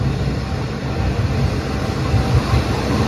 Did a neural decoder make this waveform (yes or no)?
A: no